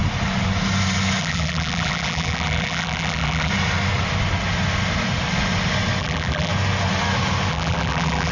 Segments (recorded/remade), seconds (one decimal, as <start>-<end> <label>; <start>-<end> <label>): 0.0-1.2 recorded; 1.2-3.5 remade; 3.5-6.0 recorded; 6.0-6.5 remade; 6.5-7.5 recorded; 7.5-8.3 remade